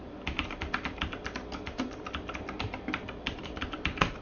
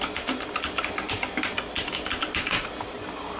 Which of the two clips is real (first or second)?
second